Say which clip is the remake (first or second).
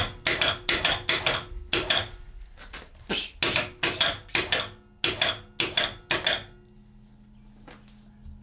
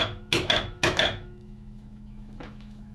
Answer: second